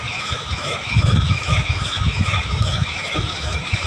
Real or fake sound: fake